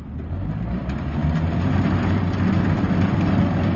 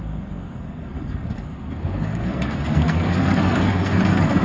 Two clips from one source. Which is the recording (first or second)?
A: first